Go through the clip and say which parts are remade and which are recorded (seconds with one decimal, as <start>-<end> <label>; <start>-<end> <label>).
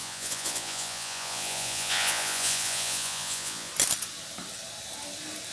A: 0.0-3.7 remade; 3.7-5.5 recorded